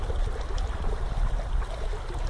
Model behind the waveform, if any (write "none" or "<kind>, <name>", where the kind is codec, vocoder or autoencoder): none